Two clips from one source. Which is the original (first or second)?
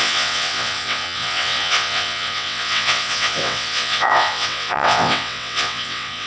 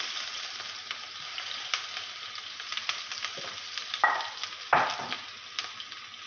second